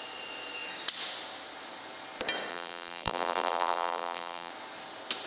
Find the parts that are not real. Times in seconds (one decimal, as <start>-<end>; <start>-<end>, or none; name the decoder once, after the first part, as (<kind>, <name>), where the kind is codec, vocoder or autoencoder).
2.5-4.5 (vocoder, BigVGAN v2)